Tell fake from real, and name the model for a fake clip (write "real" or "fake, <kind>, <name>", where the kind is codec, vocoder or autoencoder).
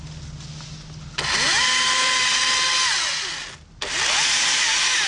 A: real